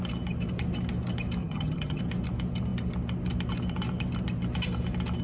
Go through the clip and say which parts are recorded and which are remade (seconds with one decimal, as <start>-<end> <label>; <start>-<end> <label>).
0.0-1.4 recorded; 1.4-2.0 remade; 2.0-5.2 recorded

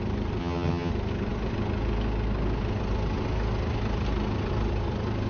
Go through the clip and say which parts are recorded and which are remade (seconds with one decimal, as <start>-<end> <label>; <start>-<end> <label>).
0.0-0.4 recorded; 0.4-0.9 remade; 0.9-5.3 recorded

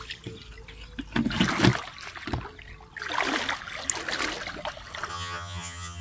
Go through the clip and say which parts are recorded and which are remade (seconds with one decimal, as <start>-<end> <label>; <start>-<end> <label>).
0.0-5.1 recorded; 5.1-6.0 remade

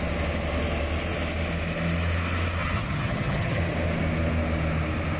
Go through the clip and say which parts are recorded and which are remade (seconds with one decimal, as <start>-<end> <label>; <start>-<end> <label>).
0.0-2.6 recorded; 2.6-3.6 remade; 3.6-5.2 recorded

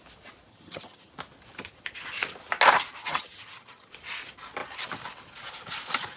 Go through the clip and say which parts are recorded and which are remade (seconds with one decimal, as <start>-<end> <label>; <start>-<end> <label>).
0.0-0.5 recorded; 0.5-1.1 remade; 1.1-3.0 recorded; 3.0-3.9 remade; 3.9-6.2 recorded

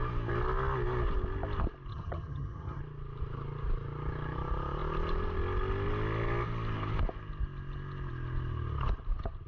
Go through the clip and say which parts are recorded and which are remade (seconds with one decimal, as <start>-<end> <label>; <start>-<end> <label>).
0.0-1.9 recorded; 1.9-2.8 remade; 2.8-9.5 recorded

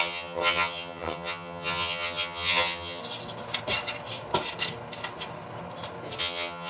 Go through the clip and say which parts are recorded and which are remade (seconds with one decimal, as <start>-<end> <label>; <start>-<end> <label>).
0.0-3.0 remade; 3.0-6.2 recorded; 6.2-6.7 remade

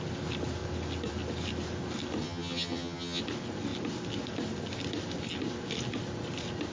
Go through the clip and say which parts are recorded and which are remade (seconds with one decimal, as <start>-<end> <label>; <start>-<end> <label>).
0.0-2.2 recorded; 2.2-3.2 remade; 3.2-6.7 recorded